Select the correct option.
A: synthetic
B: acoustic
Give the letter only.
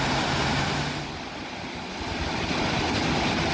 B